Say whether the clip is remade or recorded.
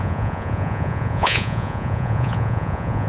remade